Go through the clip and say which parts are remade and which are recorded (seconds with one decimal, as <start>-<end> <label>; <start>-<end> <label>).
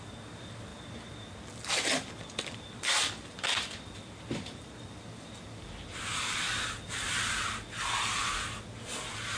0.0-9.4 remade